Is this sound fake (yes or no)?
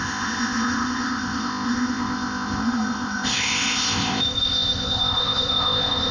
yes